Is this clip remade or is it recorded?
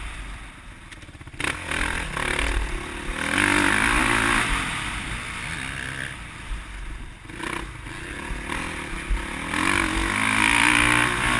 recorded